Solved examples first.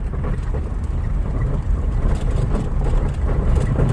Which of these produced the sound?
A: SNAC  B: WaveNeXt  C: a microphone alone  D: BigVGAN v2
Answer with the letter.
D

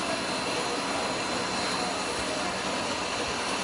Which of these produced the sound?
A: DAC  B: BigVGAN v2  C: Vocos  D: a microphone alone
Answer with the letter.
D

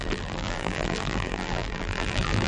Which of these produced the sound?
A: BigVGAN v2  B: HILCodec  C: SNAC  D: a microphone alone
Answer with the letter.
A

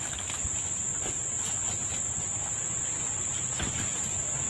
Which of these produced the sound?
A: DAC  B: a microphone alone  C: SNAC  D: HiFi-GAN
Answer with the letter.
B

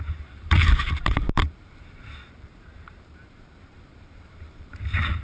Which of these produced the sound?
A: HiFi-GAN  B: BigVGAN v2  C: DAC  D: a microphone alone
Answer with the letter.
B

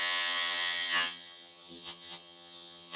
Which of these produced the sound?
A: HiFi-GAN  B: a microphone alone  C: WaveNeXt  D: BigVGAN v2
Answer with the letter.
A